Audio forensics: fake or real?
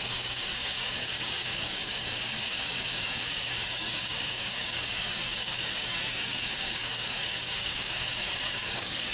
fake